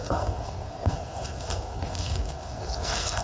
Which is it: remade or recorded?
remade